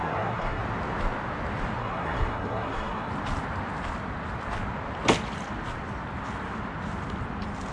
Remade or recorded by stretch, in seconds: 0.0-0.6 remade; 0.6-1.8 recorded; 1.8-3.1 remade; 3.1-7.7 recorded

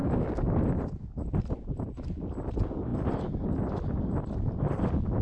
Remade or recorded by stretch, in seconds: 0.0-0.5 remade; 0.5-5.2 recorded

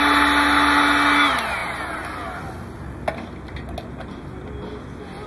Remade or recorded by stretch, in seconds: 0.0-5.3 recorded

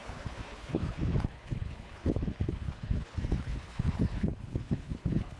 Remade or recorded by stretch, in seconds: 0.0-5.4 remade

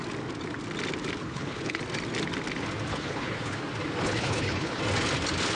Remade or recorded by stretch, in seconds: 0.0-1.2 recorded; 1.2-1.8 remade; 1.8-2.9 recorded; 2.9-3.6 remade; 3.6-4.0 recorded; 4.0-4.8 remade; 4.8-5.5 recorded